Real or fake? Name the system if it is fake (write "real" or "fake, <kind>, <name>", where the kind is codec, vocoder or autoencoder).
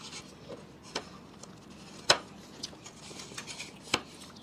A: real